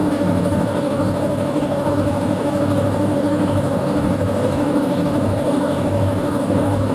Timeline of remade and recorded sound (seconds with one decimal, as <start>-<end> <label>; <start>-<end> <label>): 0.0-6.9 remade